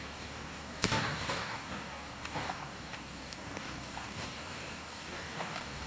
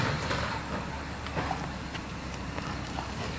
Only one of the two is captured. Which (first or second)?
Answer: second